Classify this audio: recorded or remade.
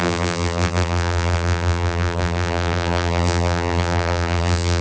remade